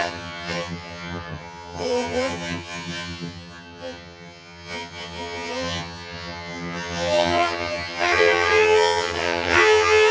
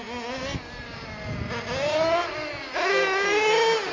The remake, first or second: first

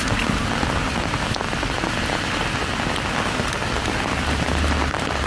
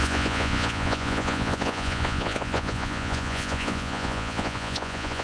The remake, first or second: second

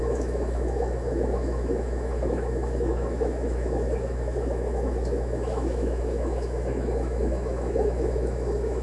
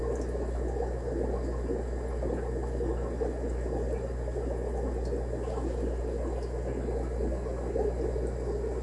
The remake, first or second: first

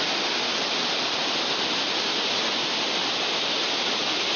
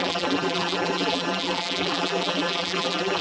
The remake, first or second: second